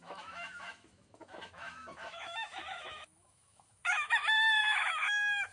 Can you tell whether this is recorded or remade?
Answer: remade